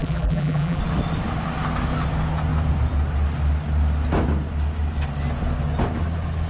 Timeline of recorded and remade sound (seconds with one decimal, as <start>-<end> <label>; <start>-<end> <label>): 0.0-0.8 remade; 0.8-6.5 recorded